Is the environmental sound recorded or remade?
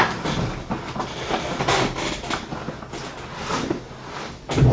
recorded